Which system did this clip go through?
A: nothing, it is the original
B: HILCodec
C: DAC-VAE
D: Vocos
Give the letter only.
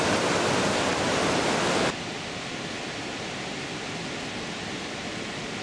A